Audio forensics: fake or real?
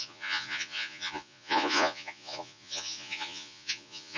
fake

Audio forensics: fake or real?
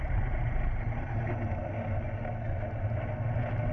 real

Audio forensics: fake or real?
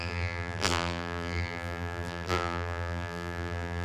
fake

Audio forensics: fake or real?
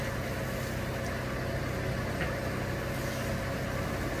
real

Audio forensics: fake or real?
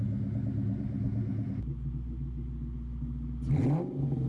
real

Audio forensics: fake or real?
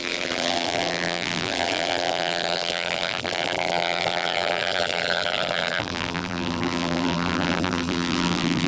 fake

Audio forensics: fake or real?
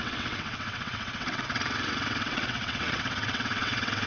fake